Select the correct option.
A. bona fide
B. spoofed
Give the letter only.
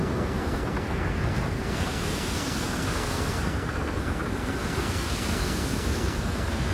B